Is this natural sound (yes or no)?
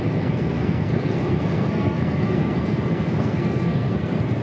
no